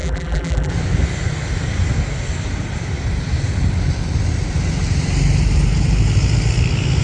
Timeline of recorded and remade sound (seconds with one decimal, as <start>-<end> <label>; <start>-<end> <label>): 0.0-0.7 remade; 0.7-7.0 recorded